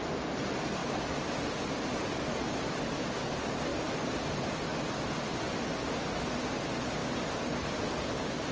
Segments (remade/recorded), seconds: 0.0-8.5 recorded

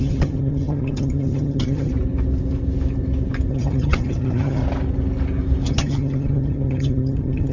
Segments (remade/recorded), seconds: 0.0-1.9 remade; 1.9-3.5 recorded; 3.5-4.6 remade; 4.6-5.7 recorded; 5.7-7.5 remade